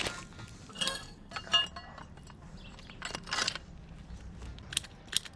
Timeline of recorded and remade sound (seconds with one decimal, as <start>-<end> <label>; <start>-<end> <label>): 0.0-0.7 recorded; 0.7-1.3 remade; 1.3-5.4 recorded